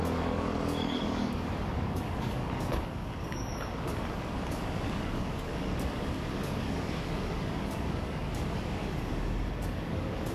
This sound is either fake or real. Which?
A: fake